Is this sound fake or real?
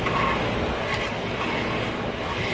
real